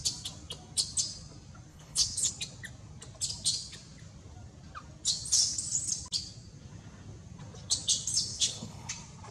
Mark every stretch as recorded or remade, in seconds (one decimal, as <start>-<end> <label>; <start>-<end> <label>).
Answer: 0.0-1.7 recorded; 1.7-2.3 remade; 2.3-8.3 recorded; 8.3-8.9 remade; 8.9-9.3 recorded

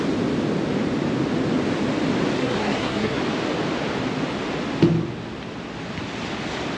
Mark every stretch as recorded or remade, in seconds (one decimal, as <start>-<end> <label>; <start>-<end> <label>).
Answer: 0.0-2.4 recorded; 2.4-3.2 remade; 3.2-6.8 recorded

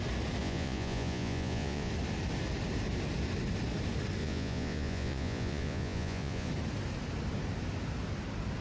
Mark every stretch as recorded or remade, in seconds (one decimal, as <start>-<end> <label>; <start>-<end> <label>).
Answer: 0.0-0.4 recorded; 0.4-1.9 remade; 1.9-4.2 recorded; 4.2-6.5 remade; 6.5-8.6 recorded

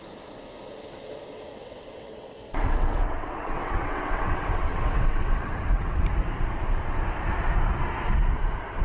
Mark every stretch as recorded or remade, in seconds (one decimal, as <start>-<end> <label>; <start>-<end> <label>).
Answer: 0.0-1.5 recorded; 1.5-6.0 remade; 6.0-8.8 recorded

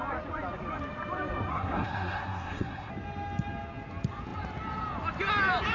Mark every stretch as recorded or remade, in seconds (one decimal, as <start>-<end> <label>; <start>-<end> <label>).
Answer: 0.0-1.5 recorded; 1.5-2.9 remade; 2.9-5.7 recorded

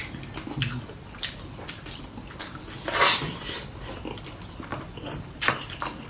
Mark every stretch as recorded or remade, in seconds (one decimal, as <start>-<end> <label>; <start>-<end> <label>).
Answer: 0.0-6.1 recorded

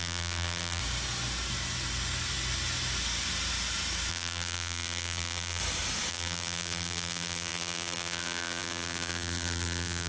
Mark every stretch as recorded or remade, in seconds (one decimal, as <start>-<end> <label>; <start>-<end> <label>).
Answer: 0.0-0.8 remade; 0.8-4.1 recorded; 4.1-5.6 remade; 5.6-6.1 recorded; 6.1-10.1 remade

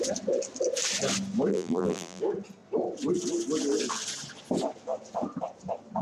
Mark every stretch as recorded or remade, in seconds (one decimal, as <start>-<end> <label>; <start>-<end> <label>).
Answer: 0.0-1.5 recorded; 1.5-2.2 remade; 2.2-6.0 recorded